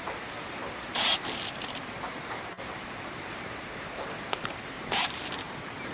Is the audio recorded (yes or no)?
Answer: no